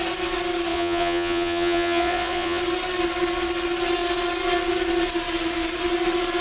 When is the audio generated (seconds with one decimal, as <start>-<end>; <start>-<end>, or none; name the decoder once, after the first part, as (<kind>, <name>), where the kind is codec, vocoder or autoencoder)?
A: 0.7-2.6 (vocoder, Vocos)